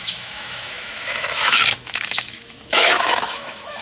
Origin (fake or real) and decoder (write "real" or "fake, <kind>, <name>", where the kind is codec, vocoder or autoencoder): fake, autoencoder, DAC-VAE